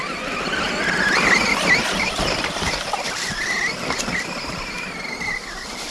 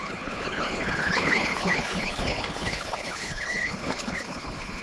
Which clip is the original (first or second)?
first